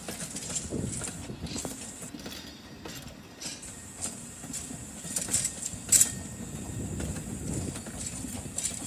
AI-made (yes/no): no